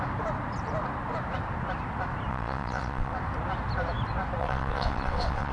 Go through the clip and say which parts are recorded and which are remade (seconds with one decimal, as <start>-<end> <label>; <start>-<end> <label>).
0.0-2.3 recorded; 2.3-3.1 remade; 3.1-4.4 recorded; 4.4-5.5 remade